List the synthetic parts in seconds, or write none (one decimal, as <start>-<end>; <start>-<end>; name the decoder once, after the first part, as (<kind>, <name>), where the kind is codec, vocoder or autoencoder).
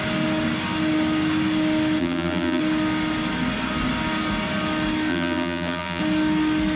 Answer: 2.0-2.6 (vocoder, BigVGAN v2); 5.1-6.0